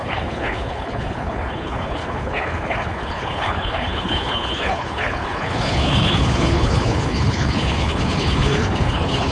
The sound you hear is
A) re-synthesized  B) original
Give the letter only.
A